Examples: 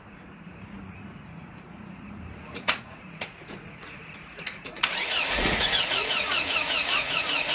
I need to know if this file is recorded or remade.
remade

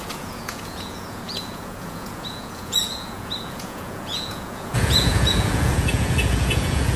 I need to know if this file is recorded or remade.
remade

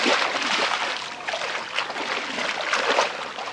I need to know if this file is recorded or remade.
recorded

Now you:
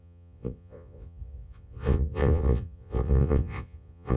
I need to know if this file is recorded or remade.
remade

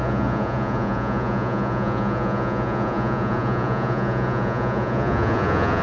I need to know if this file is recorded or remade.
remade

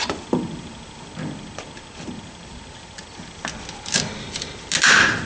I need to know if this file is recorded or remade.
recorded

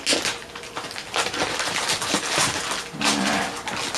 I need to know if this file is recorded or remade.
recorded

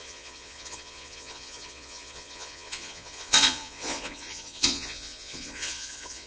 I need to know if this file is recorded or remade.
remade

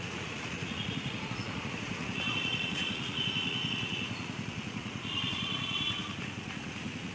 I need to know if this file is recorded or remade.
remade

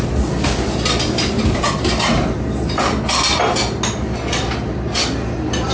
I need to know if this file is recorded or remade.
recorded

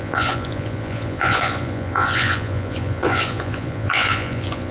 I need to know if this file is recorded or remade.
remade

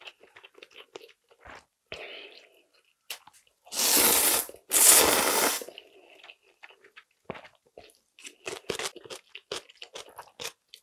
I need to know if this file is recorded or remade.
recorded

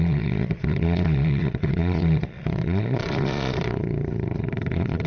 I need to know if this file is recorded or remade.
remade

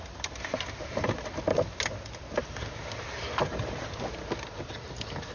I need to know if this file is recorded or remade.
recorded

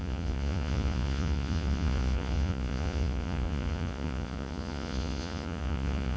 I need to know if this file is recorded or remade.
remade